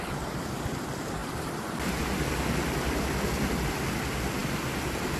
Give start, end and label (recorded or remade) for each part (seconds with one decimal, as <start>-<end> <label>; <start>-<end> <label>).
0.0-5.2 recorded